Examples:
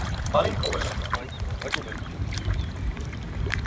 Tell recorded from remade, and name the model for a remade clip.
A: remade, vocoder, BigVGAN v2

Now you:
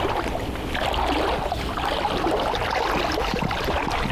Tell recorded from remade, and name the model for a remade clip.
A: recorded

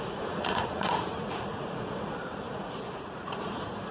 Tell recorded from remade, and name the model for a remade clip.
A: remade, vocoder, Vocos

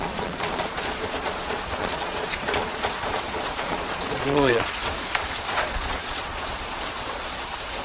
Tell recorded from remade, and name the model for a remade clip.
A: remade, vocoder, Vocos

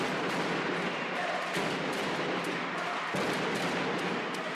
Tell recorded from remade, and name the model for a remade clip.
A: recorded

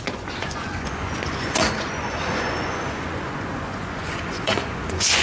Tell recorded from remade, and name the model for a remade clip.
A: remade, vocoder, Vocos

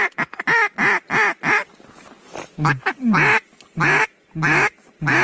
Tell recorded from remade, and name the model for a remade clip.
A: recorded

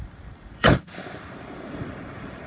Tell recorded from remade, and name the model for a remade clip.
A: remade, vocoder, BigVGAN v2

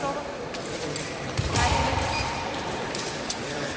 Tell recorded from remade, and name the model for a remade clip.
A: remade, vocoder, BigVGAN v2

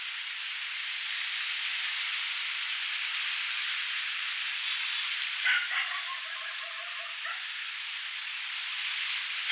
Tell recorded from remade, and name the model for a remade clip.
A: recorded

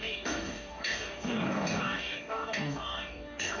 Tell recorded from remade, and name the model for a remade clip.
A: remade, codec, DAC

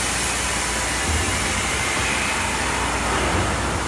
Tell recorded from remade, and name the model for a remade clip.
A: recorded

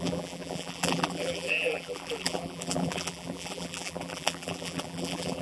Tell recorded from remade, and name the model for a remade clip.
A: remade, vocoder, BigVGAN v2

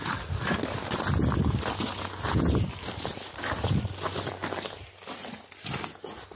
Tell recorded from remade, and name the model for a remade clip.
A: recorded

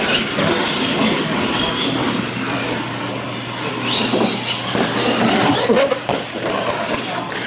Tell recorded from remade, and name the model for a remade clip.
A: recorded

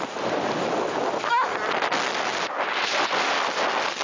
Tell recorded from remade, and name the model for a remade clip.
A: recorded